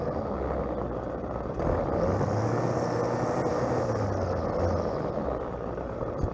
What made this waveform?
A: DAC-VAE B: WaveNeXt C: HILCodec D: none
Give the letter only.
D